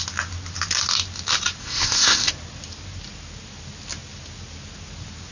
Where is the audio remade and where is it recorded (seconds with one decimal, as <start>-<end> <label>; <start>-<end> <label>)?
0.0-1.6 recorded; 1.6-2.3 remade; 2.3-5.3 recorded